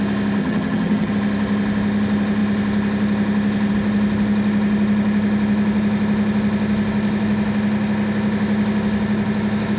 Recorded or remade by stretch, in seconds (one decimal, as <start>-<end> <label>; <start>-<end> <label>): 0.0-0.4 recorded; 0.4-1.1 remade; 1.1-9.8 recorded